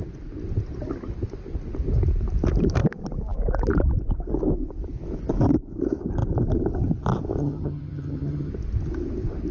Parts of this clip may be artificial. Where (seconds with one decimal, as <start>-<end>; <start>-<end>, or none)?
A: 7.4-8.5